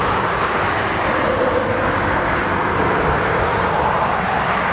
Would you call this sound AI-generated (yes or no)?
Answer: no